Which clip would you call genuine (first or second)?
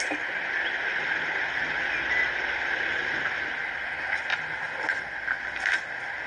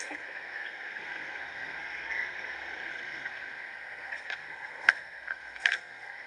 first